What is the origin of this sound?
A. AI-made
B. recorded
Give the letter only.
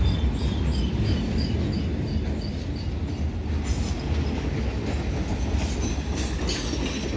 B